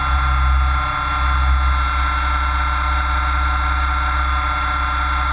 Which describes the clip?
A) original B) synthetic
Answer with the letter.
A